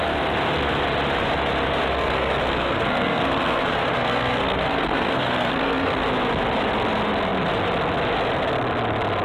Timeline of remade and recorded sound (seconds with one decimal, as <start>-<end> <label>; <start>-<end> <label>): 0.0-1.9 recorded; 1.9-6.0 remade; 6.0-9.2 recorded